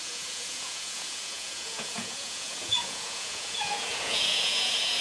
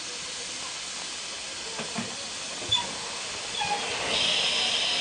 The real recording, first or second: second